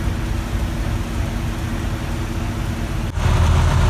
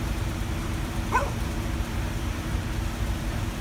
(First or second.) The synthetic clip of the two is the second